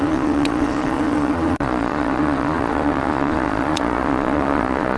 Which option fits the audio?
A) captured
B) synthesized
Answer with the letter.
B